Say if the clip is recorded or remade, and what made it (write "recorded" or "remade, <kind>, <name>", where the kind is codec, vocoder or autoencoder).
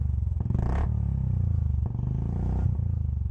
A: recorded